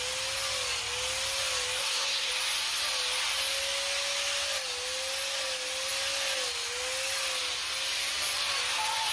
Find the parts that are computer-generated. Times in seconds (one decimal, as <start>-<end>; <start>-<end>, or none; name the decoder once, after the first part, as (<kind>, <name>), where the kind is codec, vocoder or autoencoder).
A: 1.8-2.3 (codec, SNAC)